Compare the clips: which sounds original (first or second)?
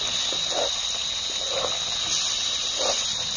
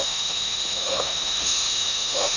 first